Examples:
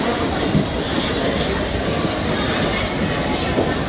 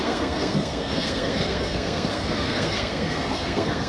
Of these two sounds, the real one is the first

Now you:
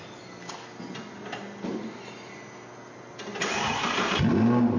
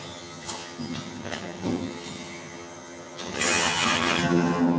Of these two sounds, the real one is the first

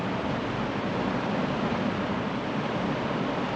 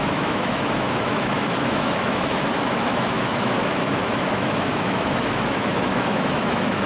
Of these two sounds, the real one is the first